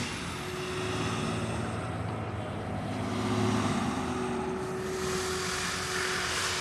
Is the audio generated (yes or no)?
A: no